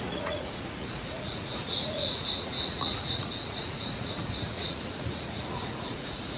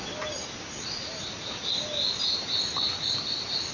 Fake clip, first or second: first